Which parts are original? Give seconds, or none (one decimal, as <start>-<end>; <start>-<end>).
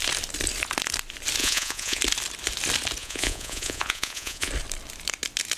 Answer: 0.0-1.4; 2.0-3.0; 4.5-5.6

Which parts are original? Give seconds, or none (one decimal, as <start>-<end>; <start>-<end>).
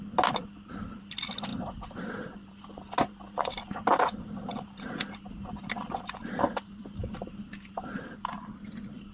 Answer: 0.0-9.1